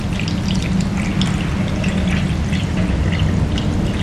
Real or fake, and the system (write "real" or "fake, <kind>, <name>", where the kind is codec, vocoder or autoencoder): real